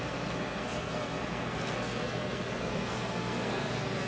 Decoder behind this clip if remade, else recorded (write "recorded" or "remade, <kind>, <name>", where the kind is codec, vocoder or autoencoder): remade, codec, SNAC